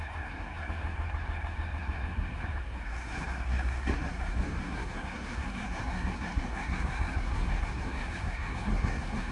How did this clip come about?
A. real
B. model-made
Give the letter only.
B